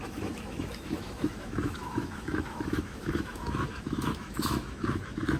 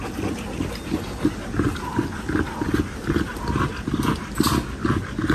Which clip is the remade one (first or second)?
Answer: first